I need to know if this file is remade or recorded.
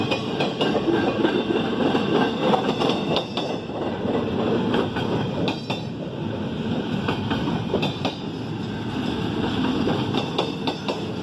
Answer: recorded